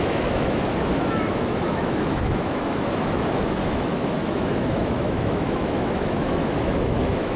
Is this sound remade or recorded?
remade